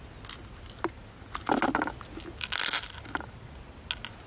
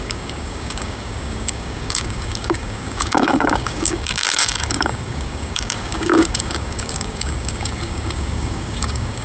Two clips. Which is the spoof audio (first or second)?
second